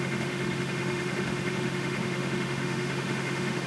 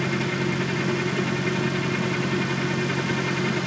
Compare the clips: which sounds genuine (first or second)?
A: second